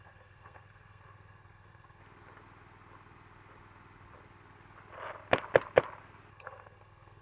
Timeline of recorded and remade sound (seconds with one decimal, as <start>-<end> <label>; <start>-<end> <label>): 0.0-2.0 remade; 2.0-6.3 recorded; 6.3-7.2 remade